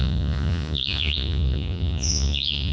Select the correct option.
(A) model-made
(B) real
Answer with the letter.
A